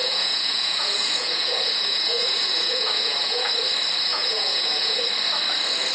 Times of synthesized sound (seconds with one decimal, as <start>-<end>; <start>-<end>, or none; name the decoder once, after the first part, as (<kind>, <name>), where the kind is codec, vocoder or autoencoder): 0.0-3.5 (vocoder, Vocos); 4.1-5.0